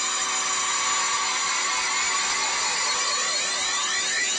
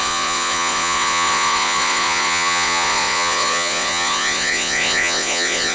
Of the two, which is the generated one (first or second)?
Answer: second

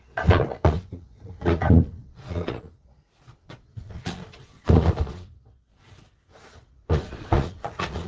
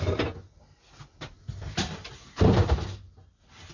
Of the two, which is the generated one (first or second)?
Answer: first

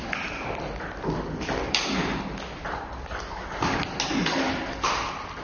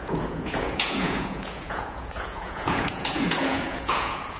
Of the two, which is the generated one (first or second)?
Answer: second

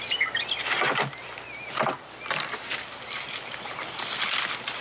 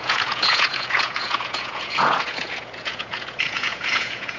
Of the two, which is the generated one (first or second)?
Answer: second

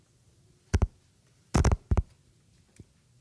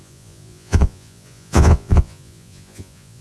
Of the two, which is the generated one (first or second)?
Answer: second